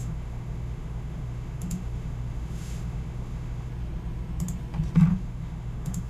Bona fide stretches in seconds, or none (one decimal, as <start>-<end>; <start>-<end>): 3.7-5.1